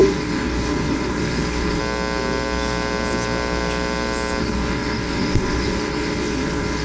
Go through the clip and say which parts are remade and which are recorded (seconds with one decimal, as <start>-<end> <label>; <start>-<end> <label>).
0.0-1.8 remade; 1.8-4.4 recorded; 4.4-6.8 remade